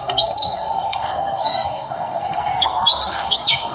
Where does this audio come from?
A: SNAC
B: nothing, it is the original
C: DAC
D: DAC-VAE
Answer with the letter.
A